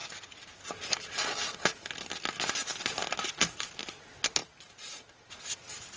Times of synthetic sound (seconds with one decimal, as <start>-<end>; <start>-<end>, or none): 0.0-0.6; 2.7-3.4; 4.4-5.3